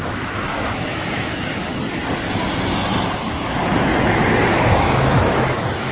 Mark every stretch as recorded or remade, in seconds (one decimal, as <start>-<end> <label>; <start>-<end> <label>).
0.0-1.3 remade; 1.3-3.3 recorded; 3.3-3.9 remade; 3.9-4.5 recorded; 4.5-5.9 remade